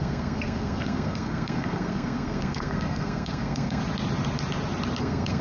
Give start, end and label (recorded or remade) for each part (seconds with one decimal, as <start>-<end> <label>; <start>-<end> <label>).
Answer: 0.0-3.8 remade; 3.8-5.0 recorded; 5.0-5.4 remade